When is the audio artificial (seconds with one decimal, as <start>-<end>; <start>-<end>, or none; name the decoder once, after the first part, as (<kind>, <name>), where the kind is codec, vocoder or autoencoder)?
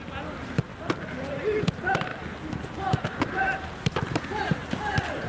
none